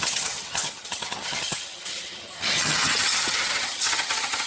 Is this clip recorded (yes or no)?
no